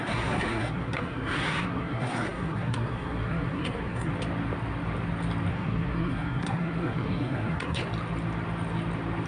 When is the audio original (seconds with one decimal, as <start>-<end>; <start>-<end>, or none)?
4.1-5.5; 7.8-9.3